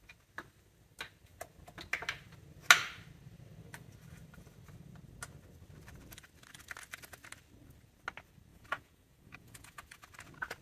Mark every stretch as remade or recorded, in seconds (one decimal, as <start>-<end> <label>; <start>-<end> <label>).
0.0-8.5 recorded; 8.5-10.0 remade; 10.0-10.6 recorded